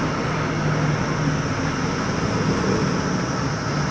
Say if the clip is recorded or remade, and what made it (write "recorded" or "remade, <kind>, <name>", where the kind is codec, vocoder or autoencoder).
recorded